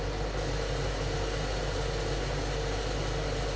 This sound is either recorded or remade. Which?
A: recorded